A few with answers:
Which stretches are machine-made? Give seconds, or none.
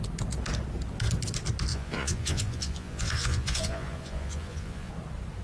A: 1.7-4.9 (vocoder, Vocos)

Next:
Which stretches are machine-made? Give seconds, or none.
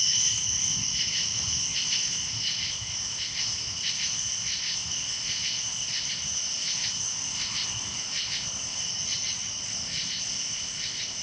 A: 0.0-8.8 (codec, ZipCodec); 9.7-11.2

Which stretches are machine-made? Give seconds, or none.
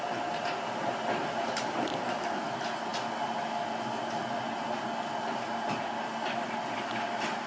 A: none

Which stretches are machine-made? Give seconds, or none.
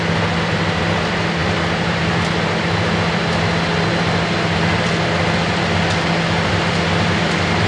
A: none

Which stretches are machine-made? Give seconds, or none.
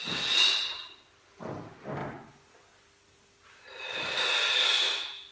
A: none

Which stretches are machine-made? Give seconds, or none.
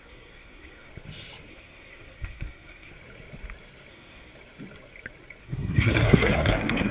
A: 0.0-0.9 (codec, SNAC); 1.5-2.9; 3.9-4.3; 5.4-6.9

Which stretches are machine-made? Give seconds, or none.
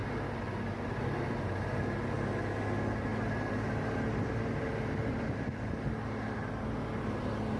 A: 0.0-1.3 (vocoder, BigVGAN v2); 3.1-6.5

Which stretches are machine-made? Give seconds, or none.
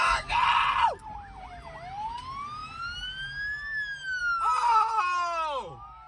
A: none